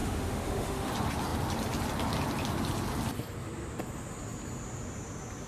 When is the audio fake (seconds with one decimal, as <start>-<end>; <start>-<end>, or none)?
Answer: 0.0-0.9